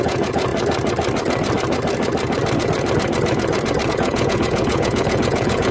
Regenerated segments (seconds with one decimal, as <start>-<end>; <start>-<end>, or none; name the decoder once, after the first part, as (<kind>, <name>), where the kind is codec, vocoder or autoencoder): 0.0-0.5 (vocoder, Vocos); 3.9-5.7